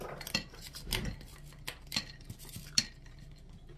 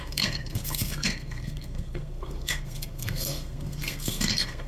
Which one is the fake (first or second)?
second